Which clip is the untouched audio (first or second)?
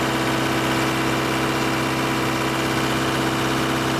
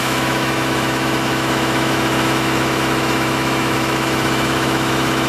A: first